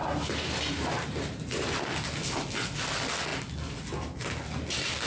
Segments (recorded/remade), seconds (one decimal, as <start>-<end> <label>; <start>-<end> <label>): 0.0-1.8 remade; 1.8-5.1 recorded